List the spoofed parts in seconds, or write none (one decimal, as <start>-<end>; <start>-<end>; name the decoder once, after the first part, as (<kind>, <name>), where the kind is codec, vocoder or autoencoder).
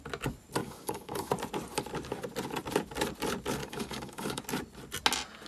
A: 0.6-1.3 (codec, DAC); 3.6-4.4